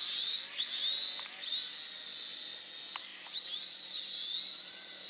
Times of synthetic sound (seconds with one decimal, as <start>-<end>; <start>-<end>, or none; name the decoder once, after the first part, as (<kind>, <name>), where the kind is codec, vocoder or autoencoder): none

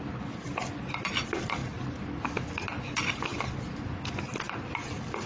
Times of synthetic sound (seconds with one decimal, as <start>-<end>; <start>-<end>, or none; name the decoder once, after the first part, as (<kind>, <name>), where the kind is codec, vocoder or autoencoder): none

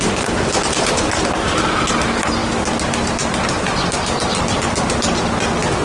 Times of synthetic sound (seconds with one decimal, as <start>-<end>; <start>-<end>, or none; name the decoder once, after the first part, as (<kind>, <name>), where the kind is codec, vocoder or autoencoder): none

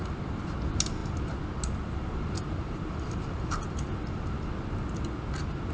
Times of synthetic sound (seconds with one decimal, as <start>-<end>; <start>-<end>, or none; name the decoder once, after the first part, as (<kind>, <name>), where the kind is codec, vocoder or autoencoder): none